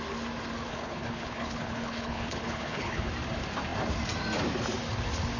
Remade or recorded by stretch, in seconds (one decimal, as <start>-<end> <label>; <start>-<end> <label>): 0.0-0.7 recorded; 0.7-3.1 remade; 3.1-5.4 recorded